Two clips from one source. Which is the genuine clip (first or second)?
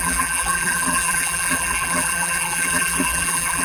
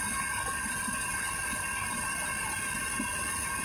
second